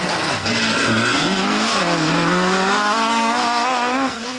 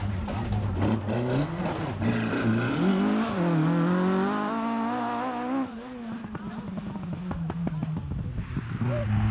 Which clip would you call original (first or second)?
second